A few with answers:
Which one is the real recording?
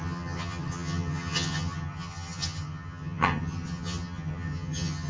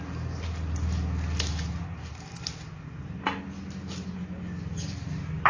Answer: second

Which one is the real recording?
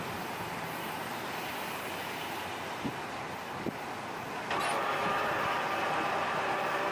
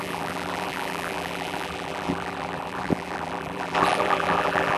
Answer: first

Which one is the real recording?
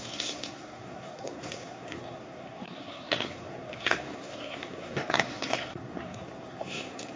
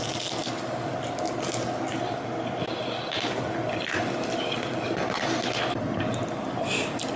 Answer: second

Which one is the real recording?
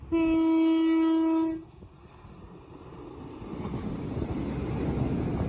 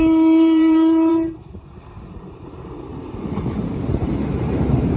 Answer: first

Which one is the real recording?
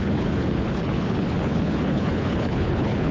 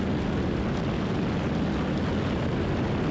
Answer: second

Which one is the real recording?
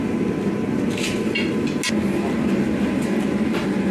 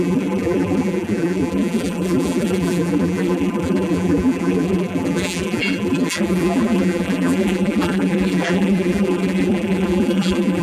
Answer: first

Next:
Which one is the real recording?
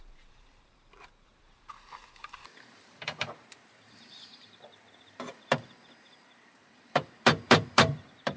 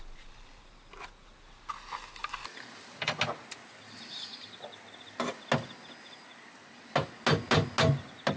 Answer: second